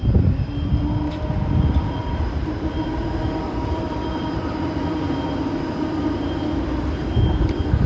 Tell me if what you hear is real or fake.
fake